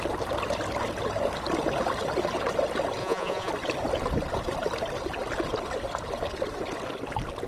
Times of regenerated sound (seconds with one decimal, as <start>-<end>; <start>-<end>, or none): 3.0-3.5